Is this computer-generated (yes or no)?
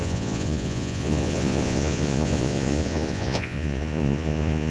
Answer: yes